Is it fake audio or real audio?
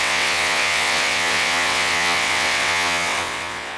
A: fake